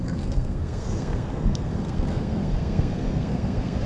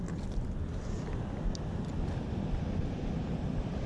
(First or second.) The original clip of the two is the second